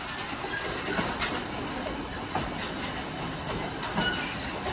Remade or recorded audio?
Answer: recorded